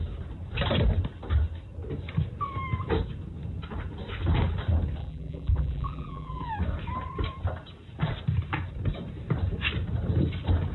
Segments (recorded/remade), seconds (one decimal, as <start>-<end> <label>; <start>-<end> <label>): 0.0-5.0 recorded; 5.0-6.5 remade; 6.5-10.7 recorded